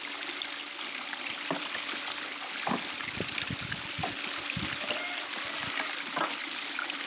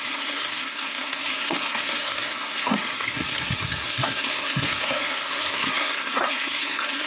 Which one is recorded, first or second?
first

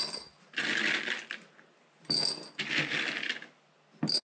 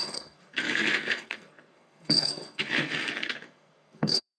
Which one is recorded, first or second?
first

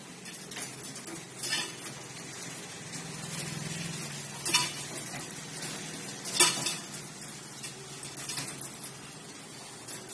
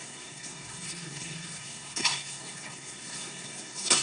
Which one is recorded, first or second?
first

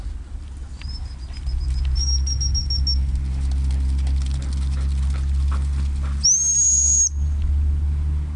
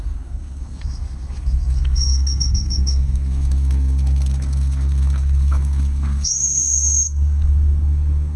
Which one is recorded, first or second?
first